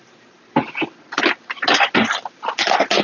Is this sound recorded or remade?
recorded